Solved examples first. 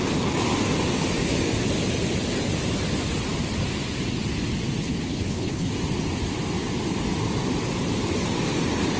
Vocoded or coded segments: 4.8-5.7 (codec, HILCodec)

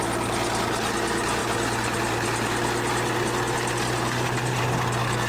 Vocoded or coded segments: none

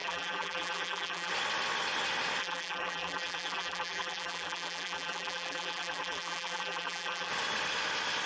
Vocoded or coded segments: 0.0-1.3 (vocoder, BigVGAN v2); 2.4-7.3

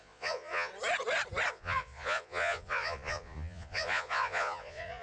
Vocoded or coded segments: 0.0-0.7 (vocoder, Vocos); 1.5-5.0

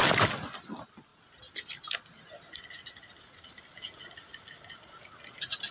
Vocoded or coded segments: none

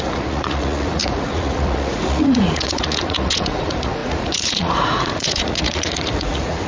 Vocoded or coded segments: 0.0-6.7 (vocoder, Vocos)